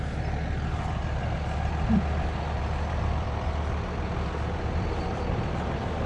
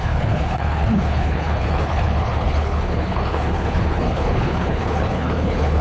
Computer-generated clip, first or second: second